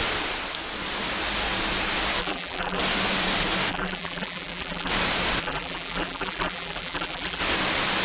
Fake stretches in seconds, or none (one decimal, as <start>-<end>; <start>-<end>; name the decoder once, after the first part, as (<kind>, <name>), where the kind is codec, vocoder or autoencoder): 2.2-2.8 (vocoder, BigVGAN v2); 3.7-4.9; 5.4-7.4